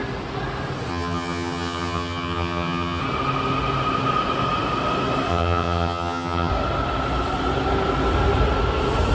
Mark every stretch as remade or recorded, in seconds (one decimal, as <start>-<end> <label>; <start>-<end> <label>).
0.0-0.9 recorded; 0.9-3.0 remade; 3.0-5.3 recorded; 5.3-6.5 remade; 6.5-9.1 recorded